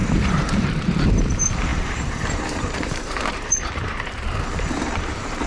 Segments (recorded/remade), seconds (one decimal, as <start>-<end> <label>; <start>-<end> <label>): 0.0-5.5 remade